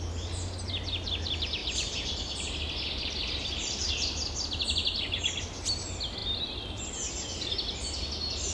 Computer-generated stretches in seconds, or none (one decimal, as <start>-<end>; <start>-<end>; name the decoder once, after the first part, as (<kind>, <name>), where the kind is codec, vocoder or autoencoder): none

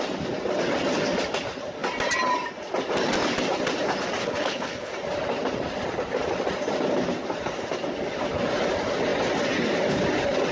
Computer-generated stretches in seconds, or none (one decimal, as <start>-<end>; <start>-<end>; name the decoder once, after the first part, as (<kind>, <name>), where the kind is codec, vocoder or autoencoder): 4.2-4.9 (codec, HILCodec)

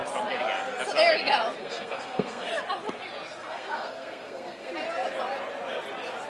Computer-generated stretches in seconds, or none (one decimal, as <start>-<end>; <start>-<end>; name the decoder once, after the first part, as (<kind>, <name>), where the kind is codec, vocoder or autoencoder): 1.6-2.5 (codec, SNAC); 3.4-4.7

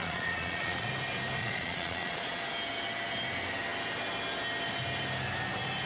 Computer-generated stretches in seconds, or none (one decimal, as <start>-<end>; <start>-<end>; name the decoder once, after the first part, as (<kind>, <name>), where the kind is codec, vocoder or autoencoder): 0.0-0.9 (vocoder, Vocos); 1.4-2.4

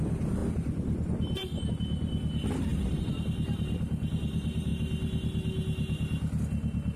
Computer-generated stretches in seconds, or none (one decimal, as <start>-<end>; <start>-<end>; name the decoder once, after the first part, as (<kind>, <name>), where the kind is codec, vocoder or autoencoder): 0.4-1.7 (vocoder, BigVGAN v2); 2.7-4.1